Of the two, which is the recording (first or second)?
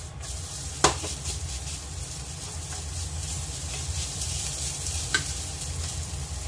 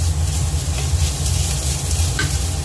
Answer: second